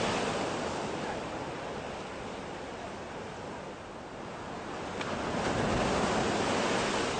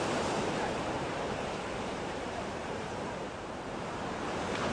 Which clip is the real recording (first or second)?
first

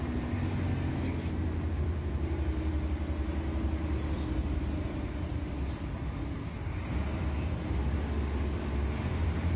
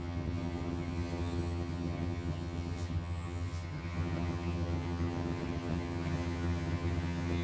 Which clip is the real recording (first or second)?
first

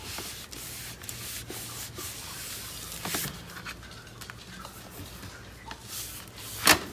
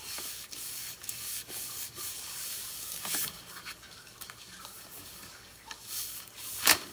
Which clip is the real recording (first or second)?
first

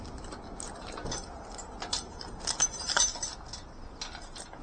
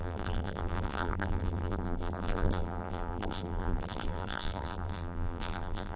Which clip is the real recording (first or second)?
first